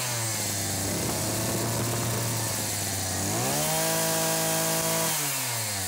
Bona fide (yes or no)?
yes